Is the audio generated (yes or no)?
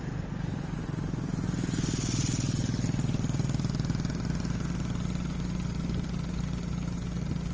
no